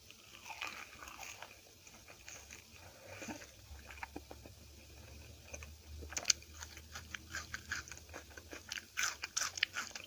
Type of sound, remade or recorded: recorded